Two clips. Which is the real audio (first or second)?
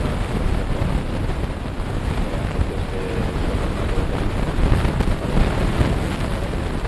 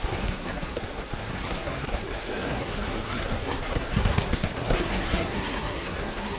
first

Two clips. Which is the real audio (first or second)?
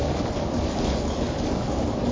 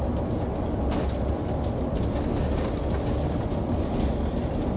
second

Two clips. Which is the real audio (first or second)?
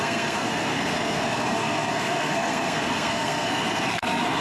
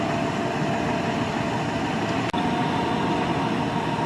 second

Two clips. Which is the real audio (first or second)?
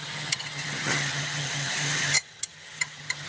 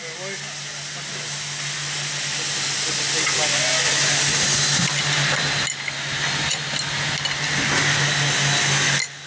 second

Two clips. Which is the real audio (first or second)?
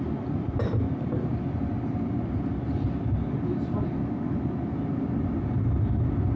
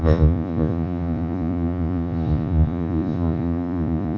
first